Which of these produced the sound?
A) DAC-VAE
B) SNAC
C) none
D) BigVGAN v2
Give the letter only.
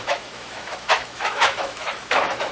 A